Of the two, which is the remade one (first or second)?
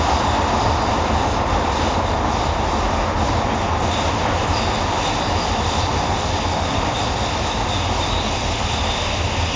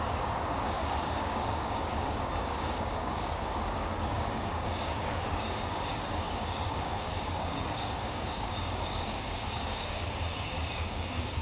second